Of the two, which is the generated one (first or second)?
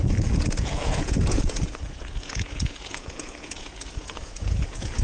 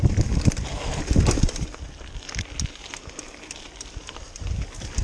first